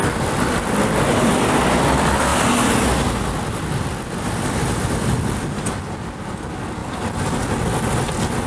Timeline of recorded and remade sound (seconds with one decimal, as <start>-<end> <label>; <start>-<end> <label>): 0.0-8.5 recorded